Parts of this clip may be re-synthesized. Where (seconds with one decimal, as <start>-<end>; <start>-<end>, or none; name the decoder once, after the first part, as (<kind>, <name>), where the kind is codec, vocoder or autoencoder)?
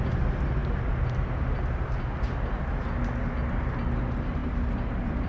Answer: 4.4-5.3 (vocoder, BigVGAN v2)